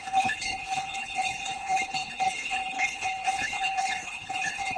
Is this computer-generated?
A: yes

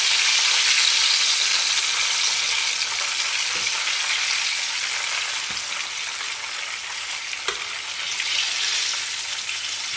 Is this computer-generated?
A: no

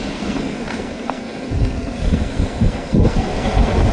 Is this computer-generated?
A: yes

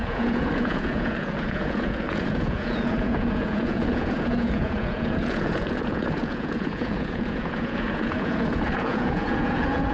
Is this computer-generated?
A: yes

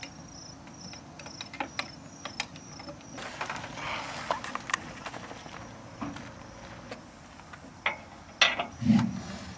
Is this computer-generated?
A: no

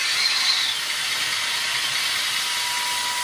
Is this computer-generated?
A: no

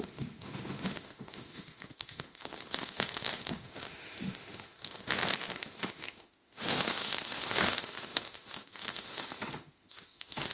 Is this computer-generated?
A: yes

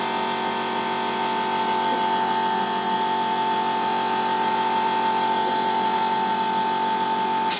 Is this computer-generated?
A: no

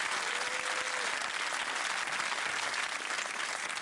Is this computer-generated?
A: no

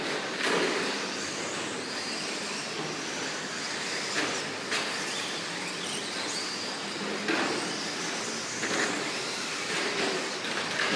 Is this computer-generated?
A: no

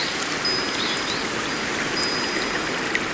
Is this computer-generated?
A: no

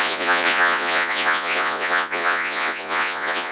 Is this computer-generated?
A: yes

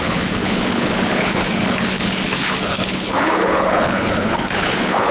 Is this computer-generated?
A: yes